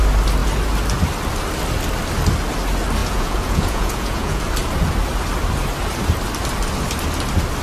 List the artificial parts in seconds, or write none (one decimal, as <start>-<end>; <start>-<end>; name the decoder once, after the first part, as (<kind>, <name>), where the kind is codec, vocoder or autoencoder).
3.0-4.4 (vocoder, Vocos)

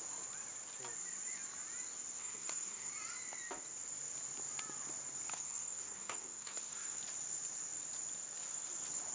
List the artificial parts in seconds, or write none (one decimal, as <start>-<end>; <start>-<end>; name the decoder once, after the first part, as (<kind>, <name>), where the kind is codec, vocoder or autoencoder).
2.2-2.9 (codec, SNAC); 5.3-7.0

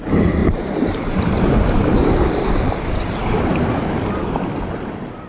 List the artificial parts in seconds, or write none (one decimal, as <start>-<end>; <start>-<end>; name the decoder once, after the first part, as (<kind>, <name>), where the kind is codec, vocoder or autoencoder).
0.4-3.1 (vocoder, BigVGAN v2)

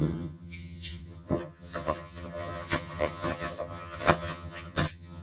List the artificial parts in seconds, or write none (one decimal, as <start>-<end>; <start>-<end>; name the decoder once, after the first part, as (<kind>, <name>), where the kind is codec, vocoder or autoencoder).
0.0-5.2 (vocoder, HiFi-GAN)

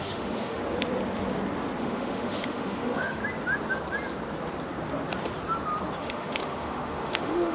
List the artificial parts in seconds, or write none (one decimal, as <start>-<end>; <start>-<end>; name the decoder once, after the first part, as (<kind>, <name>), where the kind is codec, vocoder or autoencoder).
0.0-0.6 (autoencoder, DAC-VAE); 1.8-3.2; 6.0-7.5

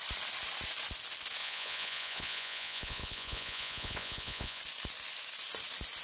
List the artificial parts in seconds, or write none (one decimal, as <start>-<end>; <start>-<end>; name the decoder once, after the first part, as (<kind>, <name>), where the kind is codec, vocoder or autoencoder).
1.4-4.6 (vocoder, Vocos)

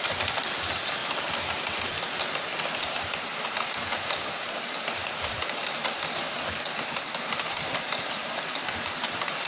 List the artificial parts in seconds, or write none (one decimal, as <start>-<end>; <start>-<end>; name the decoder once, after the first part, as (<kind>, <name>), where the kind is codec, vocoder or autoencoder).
1.0-1.8 (vocoder, BigVGAN v2); 5.0-6.1